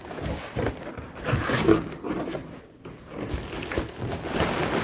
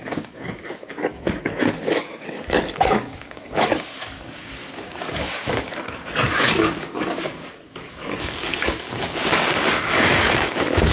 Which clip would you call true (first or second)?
first